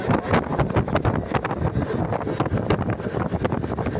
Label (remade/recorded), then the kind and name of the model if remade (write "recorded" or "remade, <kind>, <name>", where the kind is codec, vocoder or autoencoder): recorded